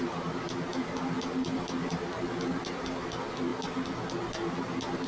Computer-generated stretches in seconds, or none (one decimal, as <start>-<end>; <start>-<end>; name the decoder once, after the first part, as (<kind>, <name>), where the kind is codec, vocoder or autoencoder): none